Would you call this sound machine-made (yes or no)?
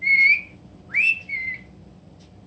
no